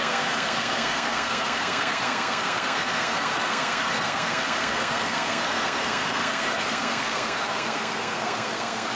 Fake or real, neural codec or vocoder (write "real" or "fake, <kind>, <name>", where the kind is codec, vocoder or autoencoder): fake, codec, SNAC